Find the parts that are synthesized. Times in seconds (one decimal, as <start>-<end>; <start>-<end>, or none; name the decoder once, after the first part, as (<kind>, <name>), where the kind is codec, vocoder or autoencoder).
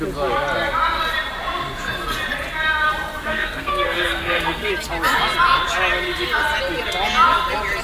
3.3-4.7 (codec, SNAC)